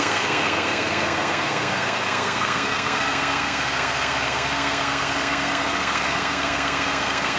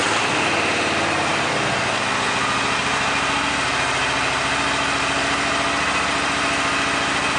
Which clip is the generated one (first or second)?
first